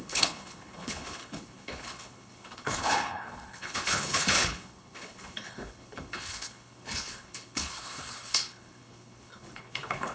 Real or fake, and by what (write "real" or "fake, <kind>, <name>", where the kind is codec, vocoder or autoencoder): fake, codec, HILCodec